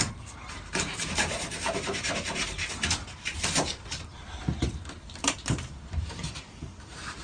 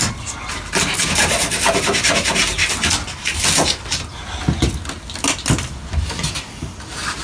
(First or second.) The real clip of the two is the second